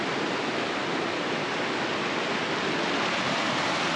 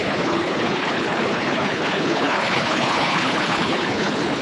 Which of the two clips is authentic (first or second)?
first